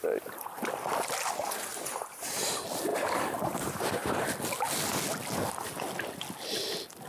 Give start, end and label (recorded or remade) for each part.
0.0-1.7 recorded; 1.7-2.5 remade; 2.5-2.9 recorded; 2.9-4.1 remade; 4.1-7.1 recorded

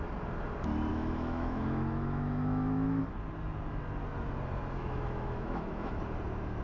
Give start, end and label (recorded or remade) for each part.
0.0-0.9 recorded; 0.9-3.0 remade; 3.0-4.8 recorded; 4.8-6.0 remade; 6.0-6.6 recorded

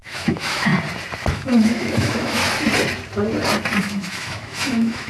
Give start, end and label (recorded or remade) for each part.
0.0-0.7 remade; 0.7-1.3 recorded; 1.3-2.4 remade; 2.4-3.8 recorded; 3.8-5.1 remade